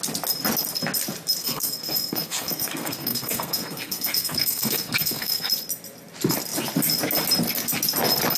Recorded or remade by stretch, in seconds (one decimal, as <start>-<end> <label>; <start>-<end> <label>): 0.0-1.4 recorded; 1.4-5.5 remade; 5.5-8.4 recorded